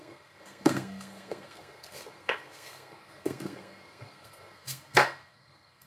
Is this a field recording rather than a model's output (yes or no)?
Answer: no